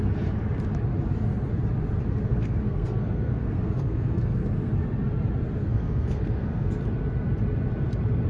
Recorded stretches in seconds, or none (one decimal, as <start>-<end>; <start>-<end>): 0.0-2.3; 4.7-5.6; 6.7-8.3